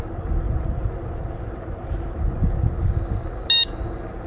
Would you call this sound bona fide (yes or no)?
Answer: yes